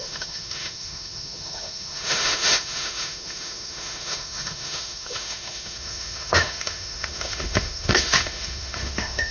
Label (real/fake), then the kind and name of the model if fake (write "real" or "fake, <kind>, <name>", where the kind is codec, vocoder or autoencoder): fake, autoencoder, DAC-VAE